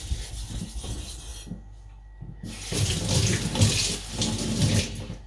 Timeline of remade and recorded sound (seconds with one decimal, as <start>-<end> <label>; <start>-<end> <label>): 0.0-5.3 recorded